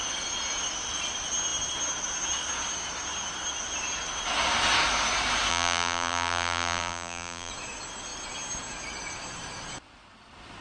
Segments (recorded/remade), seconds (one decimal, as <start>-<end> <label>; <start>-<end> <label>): 0.0-5.5 recorded; 5.5-7.5 remade; 7.5-10.6 recorded